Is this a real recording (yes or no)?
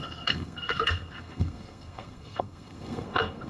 no